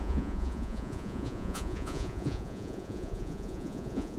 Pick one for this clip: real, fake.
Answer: fake